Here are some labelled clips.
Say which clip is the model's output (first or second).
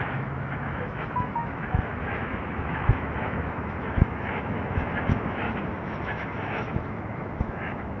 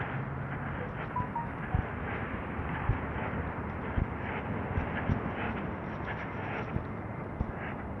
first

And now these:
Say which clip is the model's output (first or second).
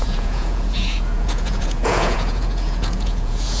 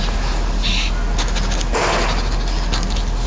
first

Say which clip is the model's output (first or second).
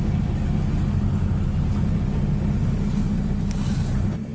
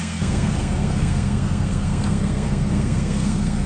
second